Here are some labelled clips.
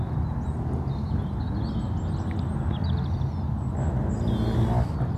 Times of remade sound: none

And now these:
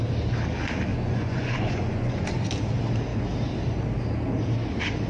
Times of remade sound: 0.9-2.3 (vocoder, Vocos)

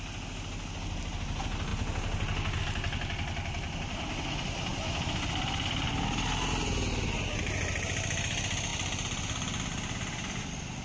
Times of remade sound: none

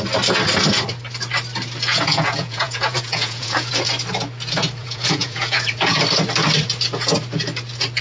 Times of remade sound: 1.9-3.7 (vocoder, Vocos); 4.8-6.0

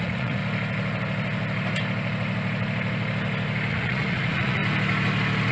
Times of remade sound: 0.0-0.4 (vocoder, Vocos); 3.7-4.6

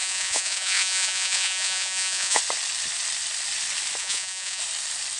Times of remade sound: 0.0-2.4 (vocoder, Vocos); 4.0-4.6

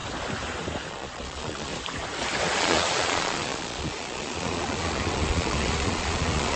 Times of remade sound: 0.9-1.7 (vocoder, Vocos); 2.6-6.6

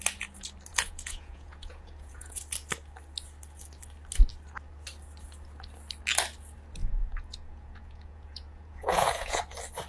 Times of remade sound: 0.7-2.4 (vocoder, Vocos); 6.8-9.4